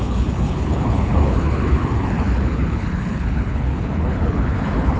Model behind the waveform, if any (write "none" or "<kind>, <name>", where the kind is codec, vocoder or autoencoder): codec, HILCodec